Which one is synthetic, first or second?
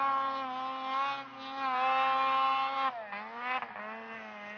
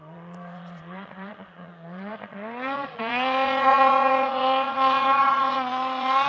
second